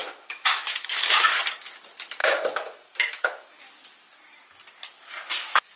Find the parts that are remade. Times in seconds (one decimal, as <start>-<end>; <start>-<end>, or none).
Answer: 0.0-1.4; 2.2-3.6

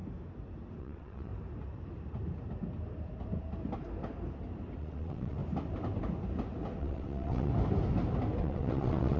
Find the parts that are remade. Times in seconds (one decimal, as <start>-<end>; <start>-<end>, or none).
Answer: 0.8-1.3; 4.8-5.4; 6.8-7.5; 8.4-9.2